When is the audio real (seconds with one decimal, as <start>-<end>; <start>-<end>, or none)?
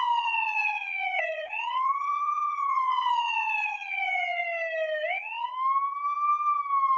4.4-5.1; 5.5-7.0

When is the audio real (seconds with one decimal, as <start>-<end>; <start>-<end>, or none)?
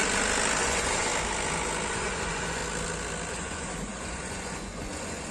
0.0-0.6; 1.1-1.9; 2.6-3.3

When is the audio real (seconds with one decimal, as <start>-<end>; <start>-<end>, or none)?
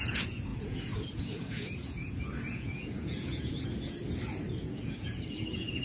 4.0-4.5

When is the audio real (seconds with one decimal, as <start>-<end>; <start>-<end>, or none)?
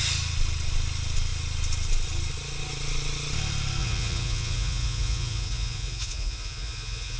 0.0-3.8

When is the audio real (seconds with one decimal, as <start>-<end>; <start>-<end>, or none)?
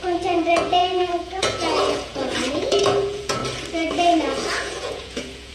3.4-4.2